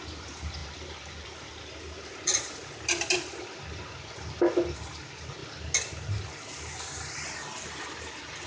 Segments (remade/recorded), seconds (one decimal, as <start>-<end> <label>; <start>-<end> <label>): 0.0-8.5 recorded